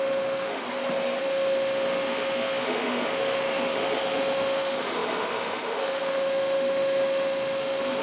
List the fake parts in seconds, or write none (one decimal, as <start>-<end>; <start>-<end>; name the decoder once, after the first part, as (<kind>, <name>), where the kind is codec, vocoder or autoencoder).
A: 0.0-0.6 (autoencoder, DAC-VAE); 1.2-8.0